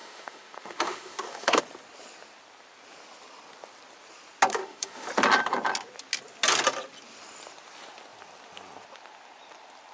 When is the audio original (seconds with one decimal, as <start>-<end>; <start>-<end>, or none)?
1.6-4.5; 5.1-9.9